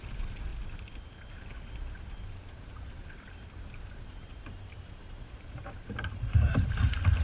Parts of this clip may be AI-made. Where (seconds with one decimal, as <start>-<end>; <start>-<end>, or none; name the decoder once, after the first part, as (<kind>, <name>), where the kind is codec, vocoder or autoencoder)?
0.0-0.5 (vocoder, BigVGAN v2); 1.3-7.2